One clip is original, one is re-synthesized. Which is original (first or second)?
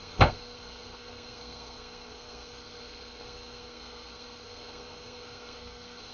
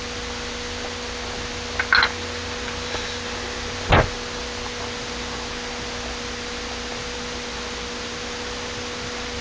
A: second